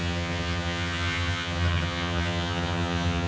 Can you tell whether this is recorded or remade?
remade